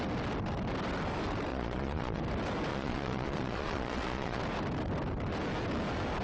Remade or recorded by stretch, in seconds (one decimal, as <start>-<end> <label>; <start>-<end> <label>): 0.0-1.5 recorded; 1.5-2.2 remade; 2.2-2.7 recorded; 2.7-4.4 remade; 4.4-6.2 recorded